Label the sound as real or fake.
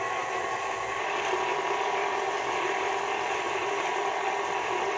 real